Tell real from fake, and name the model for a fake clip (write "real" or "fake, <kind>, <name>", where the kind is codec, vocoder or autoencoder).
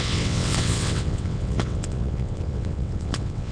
fake, vocoder, WaveNeXt